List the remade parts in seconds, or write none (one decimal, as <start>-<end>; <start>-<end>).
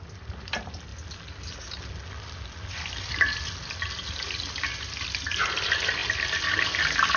none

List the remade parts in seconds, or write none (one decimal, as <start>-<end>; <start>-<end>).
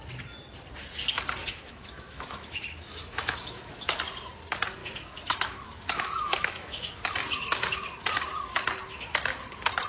1.4-4.0; 4.8-7.0